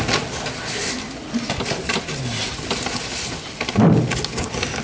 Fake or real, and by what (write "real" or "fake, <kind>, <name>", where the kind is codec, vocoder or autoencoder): real